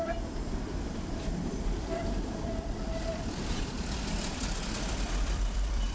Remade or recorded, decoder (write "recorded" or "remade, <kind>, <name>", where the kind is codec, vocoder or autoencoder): remade, vocoder, BigVGAN v2